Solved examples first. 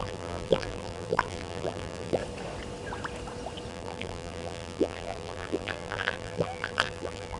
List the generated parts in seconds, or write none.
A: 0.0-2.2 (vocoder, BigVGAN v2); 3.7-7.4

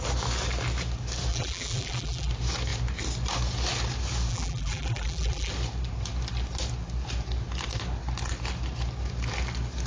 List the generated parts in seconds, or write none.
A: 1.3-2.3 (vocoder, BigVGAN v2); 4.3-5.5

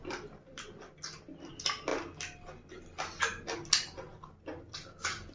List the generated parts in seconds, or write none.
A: 0.0-1.5 (vocoder, BigVGAN v2)

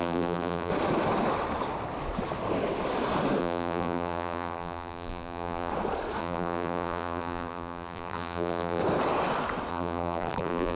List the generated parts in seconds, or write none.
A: 0.0-0.7 (vocoder, BigVGAN v2); 3.4-5.7; 6.2-8.8; 9.7-10.8